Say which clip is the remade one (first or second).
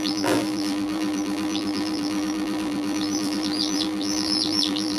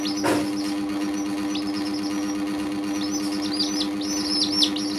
first